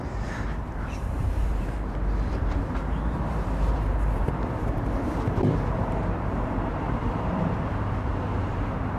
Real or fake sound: fake